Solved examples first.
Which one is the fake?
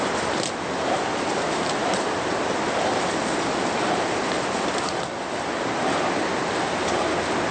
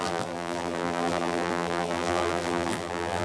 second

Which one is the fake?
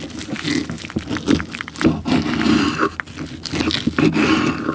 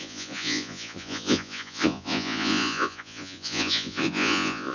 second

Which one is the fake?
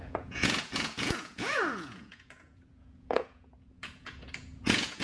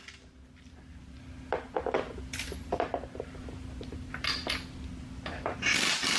first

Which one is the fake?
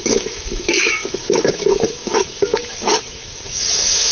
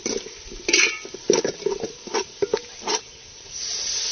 first